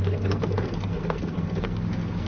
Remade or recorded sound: remade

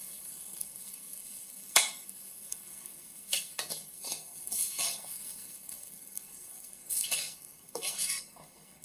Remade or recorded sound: remade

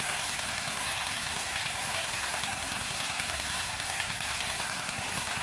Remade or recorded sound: remade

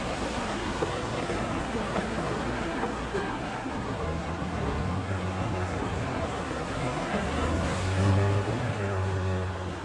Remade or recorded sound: remade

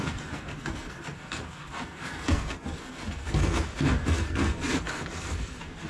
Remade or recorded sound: remade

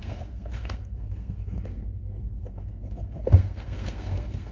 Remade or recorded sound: remade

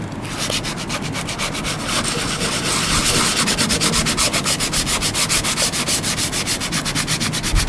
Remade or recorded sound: recorded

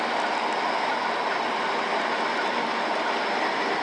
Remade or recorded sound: recorded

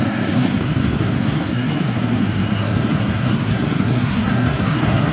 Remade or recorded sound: remade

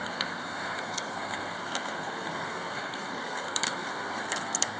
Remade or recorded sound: remade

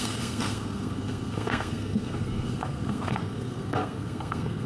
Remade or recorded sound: remade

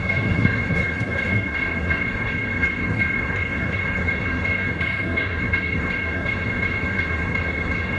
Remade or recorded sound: remade